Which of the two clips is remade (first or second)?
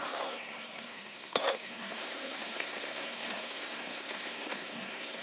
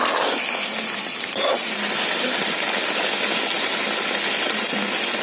first